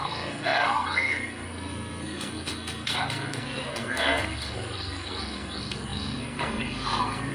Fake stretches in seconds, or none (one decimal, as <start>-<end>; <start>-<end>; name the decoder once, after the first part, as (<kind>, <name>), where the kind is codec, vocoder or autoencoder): 0.0-7.3 (codec, SNAC)